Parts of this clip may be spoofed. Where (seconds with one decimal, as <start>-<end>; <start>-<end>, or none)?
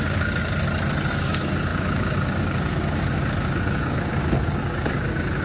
0.0-0.4; 1.1-5.4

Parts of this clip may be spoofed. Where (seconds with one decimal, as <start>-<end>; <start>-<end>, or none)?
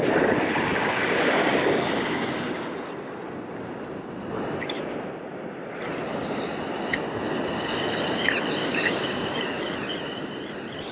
0.7-2.8; 8.6-9.7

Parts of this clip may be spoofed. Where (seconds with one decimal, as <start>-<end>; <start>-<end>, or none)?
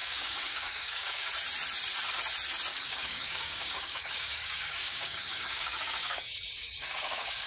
0.0-1.3; 2.7-7.5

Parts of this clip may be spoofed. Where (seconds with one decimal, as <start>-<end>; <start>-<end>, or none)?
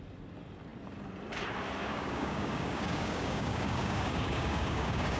1.8-5.2